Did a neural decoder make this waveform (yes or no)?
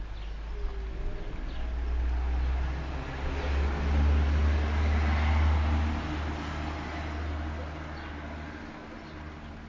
no